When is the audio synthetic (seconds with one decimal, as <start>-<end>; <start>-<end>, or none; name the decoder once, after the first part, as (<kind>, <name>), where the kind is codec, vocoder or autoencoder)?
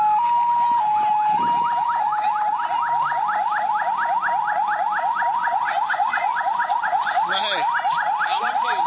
5.4-7.4 (vocoder, Vocos)